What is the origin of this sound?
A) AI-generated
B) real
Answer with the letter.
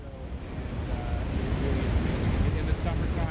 B